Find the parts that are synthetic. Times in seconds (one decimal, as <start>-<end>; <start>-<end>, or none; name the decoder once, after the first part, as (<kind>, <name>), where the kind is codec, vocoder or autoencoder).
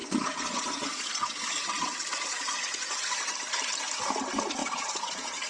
0.0-3.3 (vocoder, Vocos); 4.6-5.5